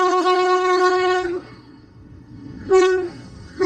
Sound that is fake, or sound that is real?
fake